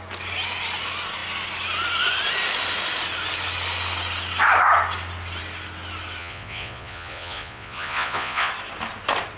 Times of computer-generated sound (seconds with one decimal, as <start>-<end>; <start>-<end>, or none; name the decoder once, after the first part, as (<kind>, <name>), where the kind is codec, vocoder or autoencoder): 6.2-8.5 (vocoder, Vocos)